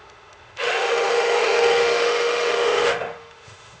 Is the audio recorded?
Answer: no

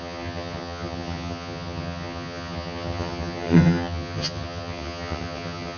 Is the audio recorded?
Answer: no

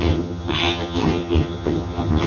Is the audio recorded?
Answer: no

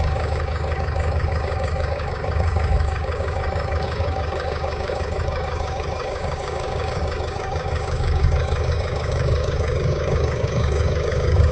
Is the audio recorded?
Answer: no